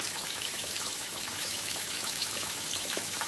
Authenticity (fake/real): fake